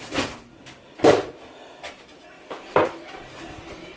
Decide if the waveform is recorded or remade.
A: remade